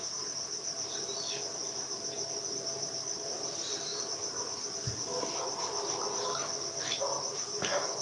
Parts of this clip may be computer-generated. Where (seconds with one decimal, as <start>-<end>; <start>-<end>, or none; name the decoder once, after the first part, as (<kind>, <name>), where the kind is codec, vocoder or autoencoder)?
none